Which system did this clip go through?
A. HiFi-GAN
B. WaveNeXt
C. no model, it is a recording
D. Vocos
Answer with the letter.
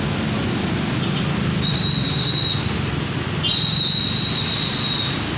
C